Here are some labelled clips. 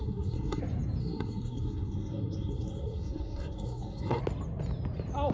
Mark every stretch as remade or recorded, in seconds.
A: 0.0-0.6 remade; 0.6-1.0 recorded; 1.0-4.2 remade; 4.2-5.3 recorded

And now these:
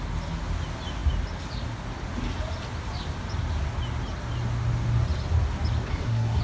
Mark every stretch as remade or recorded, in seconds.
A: 0.0-5.9 recorded; 5.9-6.4 remade

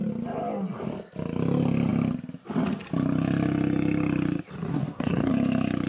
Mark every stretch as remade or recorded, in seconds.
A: 0.0-4.7 recorded; 4.7-5.3 remade; 5.3-5.9 recorded

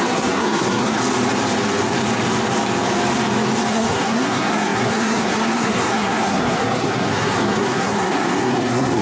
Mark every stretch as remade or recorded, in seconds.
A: 0.0-1.0 remade; 1.0-3.7 recorded; 3.7-9.0 remade

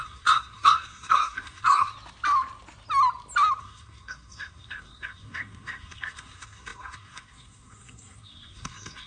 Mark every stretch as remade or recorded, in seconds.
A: 0.0-1.9 remade; 1.9-3.6 recorded; 3.6-9.1 remade

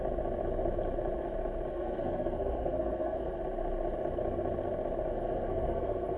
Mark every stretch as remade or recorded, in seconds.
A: 0.0-1.7 recorded; 1.7-3.4 remade; 3.4-5.1 recorded; 5.1-6.2 remade

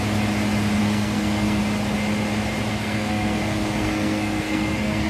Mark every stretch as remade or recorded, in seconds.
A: 0.0-0.8 recorded; 0.8-1.6 remade; 1.6-2.7 recorded; 2.7-5.1 remade

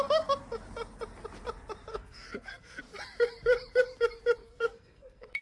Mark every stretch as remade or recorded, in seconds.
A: 0.0-1.9 recorded; 1.9-2.8 remade; 2.8-4.4 recorded; 4.4-5.4 remade